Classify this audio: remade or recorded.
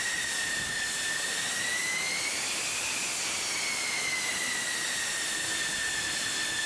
recorded